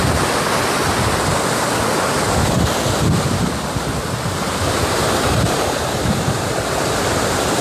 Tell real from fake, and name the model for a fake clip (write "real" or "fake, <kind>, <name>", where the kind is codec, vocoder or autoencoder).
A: real